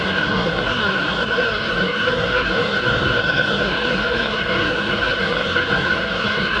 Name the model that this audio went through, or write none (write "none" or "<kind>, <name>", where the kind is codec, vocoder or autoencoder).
codec, SNAC